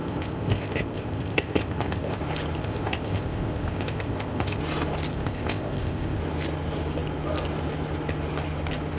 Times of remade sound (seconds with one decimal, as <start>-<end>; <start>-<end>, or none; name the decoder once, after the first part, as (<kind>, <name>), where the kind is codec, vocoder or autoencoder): 0.0-2.2 (codec, ZipCodec); 2.6-4.6; 5.1-6.2